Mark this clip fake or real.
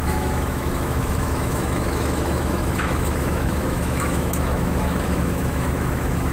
fake